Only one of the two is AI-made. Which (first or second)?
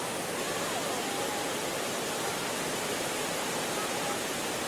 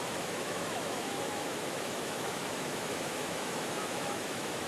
second